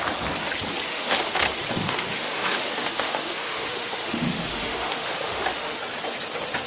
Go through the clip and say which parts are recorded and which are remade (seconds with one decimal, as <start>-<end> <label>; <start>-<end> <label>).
0.0-0.9 recorded; 0.9-1.4 remade; 1.4-1.8 recorded; 1.8-5.8 remade; 5.8-6.7 recorded